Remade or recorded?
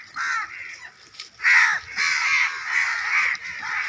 recorded